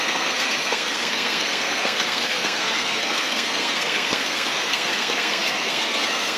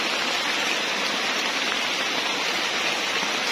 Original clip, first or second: second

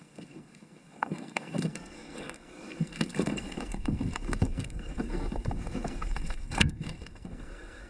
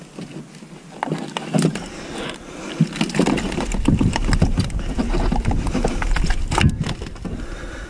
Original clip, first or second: second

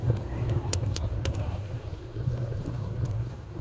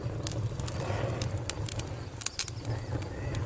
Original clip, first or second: second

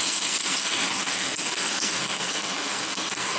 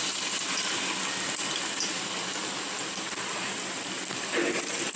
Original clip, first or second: second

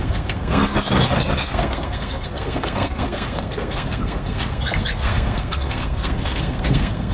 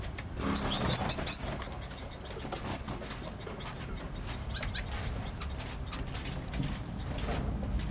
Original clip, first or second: second